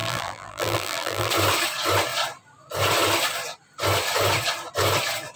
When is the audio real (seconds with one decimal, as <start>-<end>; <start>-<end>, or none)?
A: 1.3-5.4